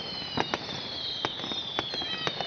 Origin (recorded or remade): recorded